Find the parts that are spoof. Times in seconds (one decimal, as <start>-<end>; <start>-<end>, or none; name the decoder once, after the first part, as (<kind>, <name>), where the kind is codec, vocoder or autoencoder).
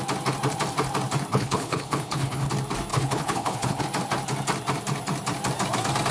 1.3-2.5 (codec, HILCodec); 2.9-3.8